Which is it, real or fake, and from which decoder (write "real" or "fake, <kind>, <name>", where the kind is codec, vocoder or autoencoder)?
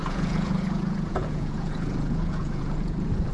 fake, vocoder, Vocos